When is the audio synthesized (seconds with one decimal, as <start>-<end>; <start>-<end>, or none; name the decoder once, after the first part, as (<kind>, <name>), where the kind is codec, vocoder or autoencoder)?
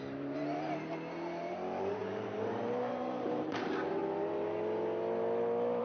0.0-4.0 (vocoder, BigVGAN v2)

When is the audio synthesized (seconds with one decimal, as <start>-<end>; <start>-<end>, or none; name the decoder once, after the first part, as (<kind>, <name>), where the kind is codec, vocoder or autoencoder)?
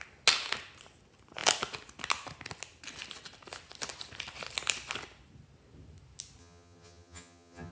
6.4-7.7 (vocoder, HiFi-GAN)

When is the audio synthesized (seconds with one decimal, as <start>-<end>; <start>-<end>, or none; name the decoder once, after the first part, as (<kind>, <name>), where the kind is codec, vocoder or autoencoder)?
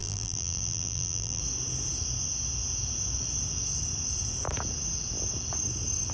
0.0-1.4 (vocoder, BigVGAN v2)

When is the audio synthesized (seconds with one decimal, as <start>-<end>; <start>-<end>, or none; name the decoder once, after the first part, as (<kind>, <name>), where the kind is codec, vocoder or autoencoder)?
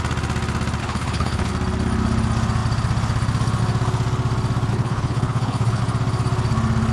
0.8-1.5 (codec, HILCodec); 4.7-5.8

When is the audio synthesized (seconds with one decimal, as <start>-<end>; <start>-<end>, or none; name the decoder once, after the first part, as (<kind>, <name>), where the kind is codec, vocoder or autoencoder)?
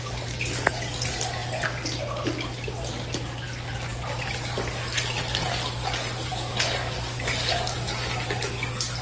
6.3-7.5 (codec, DAC)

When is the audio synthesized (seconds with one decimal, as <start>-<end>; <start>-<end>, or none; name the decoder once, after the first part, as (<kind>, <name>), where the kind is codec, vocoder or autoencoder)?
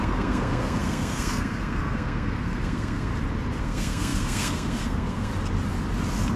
0.0-3.1 (codec, SNAC); 3.6-5.3